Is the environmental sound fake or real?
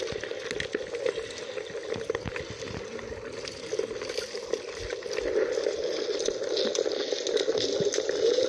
real